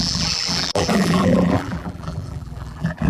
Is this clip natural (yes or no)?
no